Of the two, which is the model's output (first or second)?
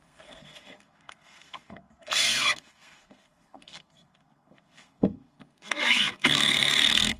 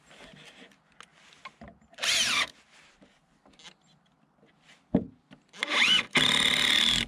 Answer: first